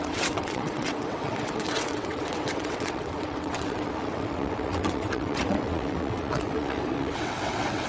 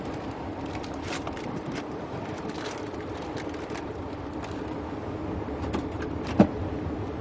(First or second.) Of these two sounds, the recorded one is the second